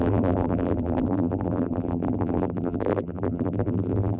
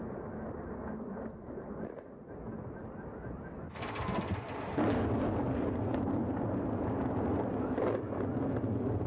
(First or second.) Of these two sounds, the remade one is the first